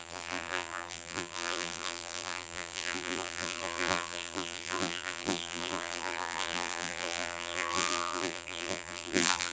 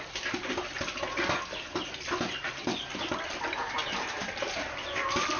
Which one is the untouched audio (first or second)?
second